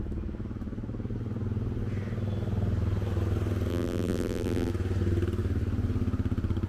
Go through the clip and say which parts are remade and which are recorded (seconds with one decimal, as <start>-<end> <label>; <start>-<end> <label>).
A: 0.0-3.7 recorded; 3.7-4.7 remade; 4.7-6.7 recorded